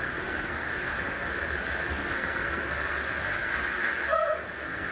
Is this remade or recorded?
remade